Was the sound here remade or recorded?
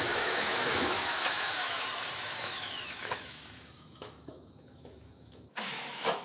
remade